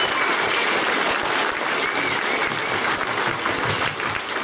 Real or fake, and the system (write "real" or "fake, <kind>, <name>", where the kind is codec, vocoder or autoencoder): real